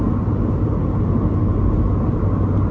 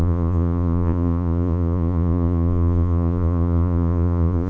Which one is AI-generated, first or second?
second